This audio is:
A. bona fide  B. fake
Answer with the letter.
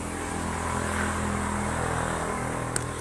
A